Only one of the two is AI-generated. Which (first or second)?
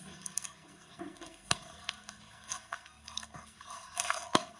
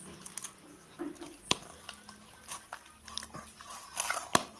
first